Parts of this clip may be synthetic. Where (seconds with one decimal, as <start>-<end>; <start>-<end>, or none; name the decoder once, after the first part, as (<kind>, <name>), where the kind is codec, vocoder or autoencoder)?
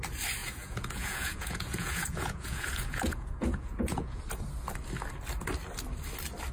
0.4-4.2 (vocoder, Vocos)